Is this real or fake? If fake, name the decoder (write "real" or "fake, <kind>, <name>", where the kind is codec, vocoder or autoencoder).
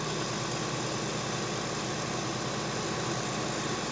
real